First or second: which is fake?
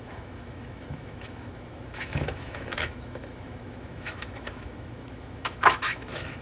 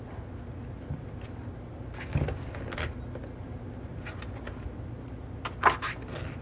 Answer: first